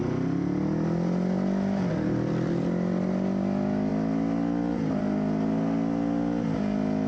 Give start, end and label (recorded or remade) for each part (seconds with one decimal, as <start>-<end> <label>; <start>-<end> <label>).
0.0-7.1 recorded